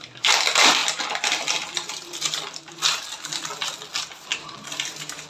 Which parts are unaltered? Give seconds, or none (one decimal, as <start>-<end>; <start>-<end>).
0.0-4.3